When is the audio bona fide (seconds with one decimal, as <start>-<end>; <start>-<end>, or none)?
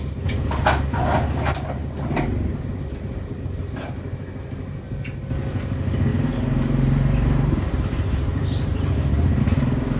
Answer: 0.0-6.1; 9.4-10.0